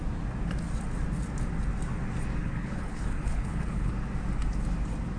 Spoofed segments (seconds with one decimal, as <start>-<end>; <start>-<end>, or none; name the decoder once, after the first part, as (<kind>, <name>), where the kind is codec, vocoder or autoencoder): 2.4-3.9 (codec, HILCodec)